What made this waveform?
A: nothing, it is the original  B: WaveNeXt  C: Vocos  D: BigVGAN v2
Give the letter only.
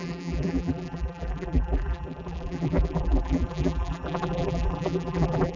D